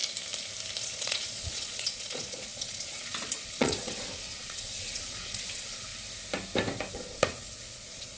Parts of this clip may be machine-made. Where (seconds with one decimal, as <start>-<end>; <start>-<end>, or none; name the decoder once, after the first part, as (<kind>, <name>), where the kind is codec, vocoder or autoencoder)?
0.8-5.9 (vocoder, Vocos); 6.9-8.2